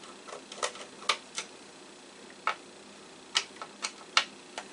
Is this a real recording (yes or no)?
yes